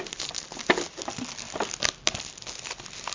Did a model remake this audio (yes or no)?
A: no